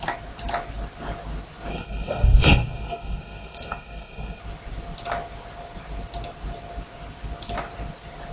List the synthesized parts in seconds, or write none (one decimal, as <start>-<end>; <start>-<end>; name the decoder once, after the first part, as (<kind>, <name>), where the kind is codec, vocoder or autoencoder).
1.7-4.4 (codec, SNAC)